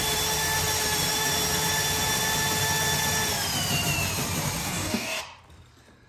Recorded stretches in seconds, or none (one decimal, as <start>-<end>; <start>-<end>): 0.0-4.6; 5.2-6.1